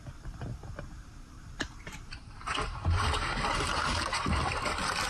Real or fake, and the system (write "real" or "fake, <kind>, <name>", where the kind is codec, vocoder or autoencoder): fake, vocoder, BigVGAN v2